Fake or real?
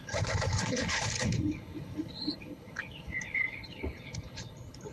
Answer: fake